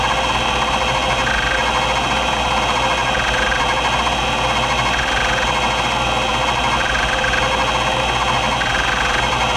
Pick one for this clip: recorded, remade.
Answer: recorded